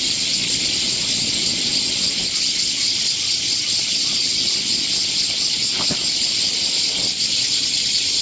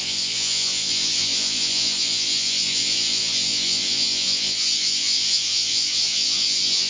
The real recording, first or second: first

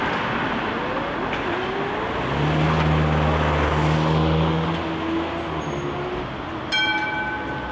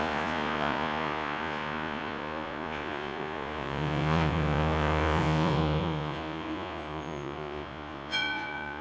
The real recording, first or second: first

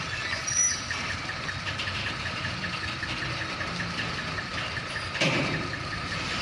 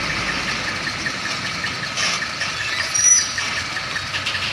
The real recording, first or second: second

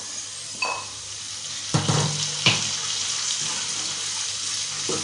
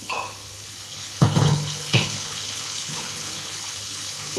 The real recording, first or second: first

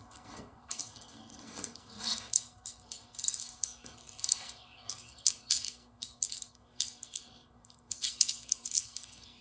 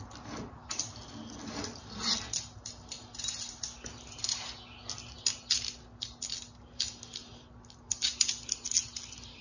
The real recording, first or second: second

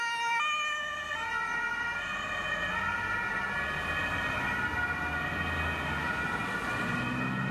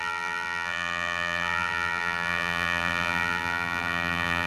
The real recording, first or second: first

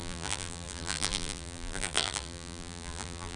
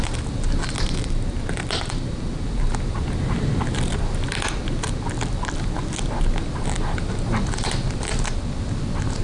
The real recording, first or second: second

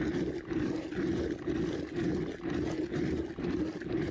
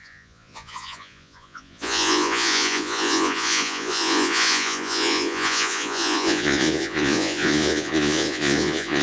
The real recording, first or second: first